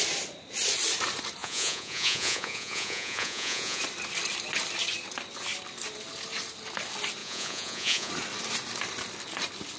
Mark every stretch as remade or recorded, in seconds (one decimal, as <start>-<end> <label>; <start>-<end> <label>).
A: 0.0-1.4 recorded; 1.4-3.8 remade; 3.8-7.2 recorded; 7.2-8.1 remade; 8.1-9.8 recorded